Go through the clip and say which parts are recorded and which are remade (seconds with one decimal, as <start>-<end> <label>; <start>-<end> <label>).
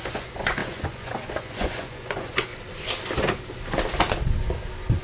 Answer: 0.0-2.5 remade; 2.5-5.0 recorded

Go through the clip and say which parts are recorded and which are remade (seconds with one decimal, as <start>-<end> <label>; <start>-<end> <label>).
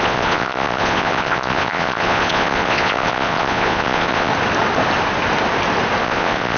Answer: 0.0-4.3 remade; 4.3-6.0 recorded; 6.0-6.6 remade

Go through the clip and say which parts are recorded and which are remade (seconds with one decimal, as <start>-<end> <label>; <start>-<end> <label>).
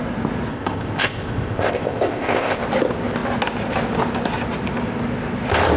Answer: 0.0-0.5 recorded; 0.5-2.6 remade; 2.6-5.8 recorded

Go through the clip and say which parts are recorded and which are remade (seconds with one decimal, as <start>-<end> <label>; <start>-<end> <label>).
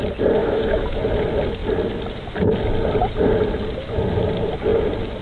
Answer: 0.0-0.4 recorded; 0.4-1.0 remade; 1.0-5.2 recorded